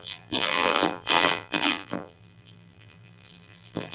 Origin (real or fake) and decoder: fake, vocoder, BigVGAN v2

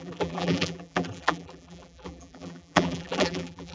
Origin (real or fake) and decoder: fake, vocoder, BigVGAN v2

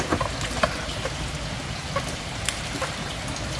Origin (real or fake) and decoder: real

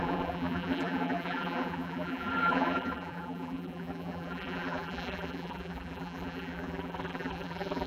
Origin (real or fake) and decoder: fake, vocoder, BigVGAN v2